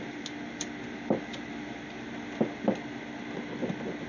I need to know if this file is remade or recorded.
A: recorded